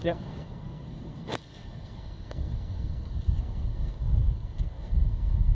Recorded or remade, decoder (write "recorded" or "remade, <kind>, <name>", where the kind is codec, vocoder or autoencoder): remade, codec, SNAC